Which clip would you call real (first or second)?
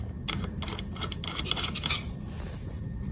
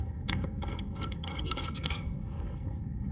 first